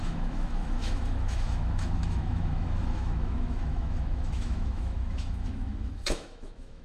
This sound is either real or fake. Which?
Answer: fake